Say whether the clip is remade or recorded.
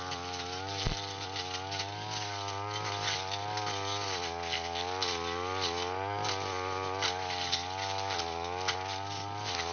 recorded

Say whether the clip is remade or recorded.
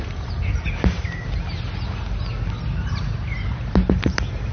recorded